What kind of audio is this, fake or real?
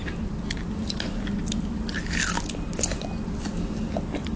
real